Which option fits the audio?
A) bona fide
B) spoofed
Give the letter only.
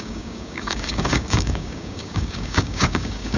B